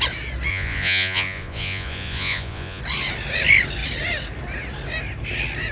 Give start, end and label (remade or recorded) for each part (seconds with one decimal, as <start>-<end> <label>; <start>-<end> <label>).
0.0-0.5 recorded; 0.5-2.8 remade; 2.8-5.7 recorded